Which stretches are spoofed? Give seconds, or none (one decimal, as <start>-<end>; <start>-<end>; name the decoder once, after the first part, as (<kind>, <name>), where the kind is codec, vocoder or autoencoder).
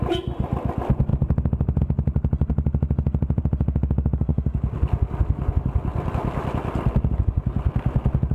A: none